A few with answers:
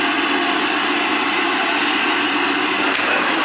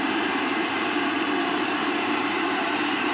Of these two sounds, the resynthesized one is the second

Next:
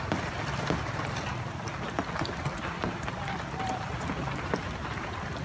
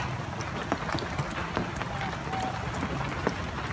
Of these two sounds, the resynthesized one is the first